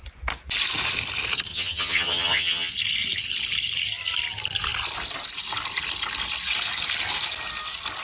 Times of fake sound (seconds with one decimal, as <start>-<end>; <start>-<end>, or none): 1.5-2.7